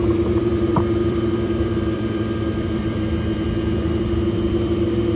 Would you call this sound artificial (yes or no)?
yes